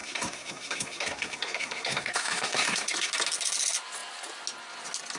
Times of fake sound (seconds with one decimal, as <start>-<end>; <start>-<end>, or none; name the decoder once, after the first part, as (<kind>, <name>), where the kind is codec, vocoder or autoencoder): 0.0-3.1 (codec, SNAC)